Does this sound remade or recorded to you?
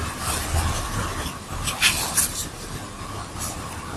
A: recorded